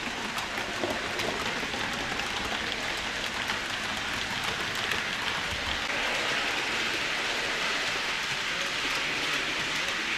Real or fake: real